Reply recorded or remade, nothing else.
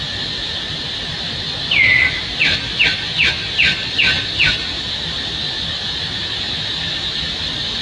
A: recorded